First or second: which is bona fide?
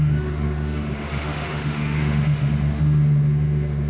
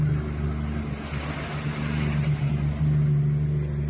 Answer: second